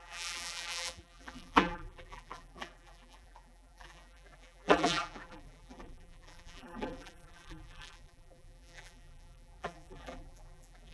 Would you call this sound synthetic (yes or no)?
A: yes